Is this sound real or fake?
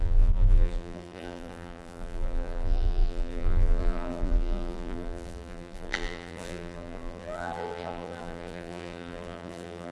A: fake